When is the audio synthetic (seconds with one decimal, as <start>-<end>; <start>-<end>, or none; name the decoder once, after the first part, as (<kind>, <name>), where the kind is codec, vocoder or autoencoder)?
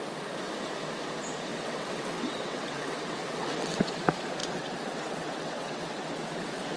1.5-3.8 (vocoder, WaveNeXt); 4.4-6.8